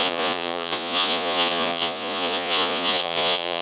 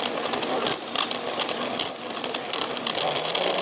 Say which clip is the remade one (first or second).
first